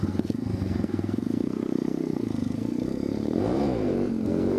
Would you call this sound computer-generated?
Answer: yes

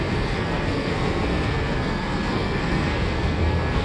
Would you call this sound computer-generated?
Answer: yes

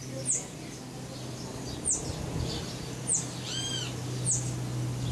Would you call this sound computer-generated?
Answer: no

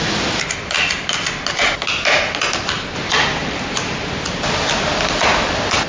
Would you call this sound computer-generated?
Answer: no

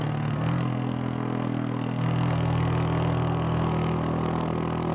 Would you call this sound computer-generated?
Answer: yes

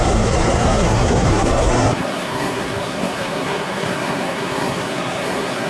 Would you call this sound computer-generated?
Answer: yes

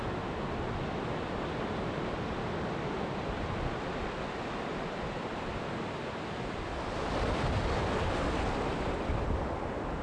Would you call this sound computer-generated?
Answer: no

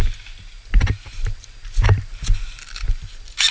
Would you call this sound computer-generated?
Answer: no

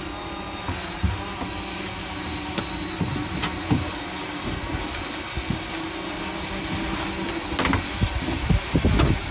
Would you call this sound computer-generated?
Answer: no